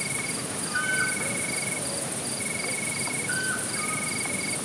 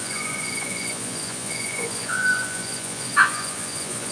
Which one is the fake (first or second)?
second